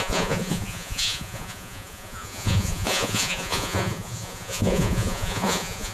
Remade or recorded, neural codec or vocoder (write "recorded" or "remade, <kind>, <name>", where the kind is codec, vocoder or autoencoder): remade, vocoder, Vocos